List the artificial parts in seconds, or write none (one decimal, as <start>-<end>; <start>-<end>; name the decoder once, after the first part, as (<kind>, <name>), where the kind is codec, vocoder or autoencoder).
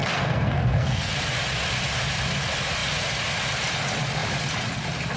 0.0-1.1 (codec, SNAC)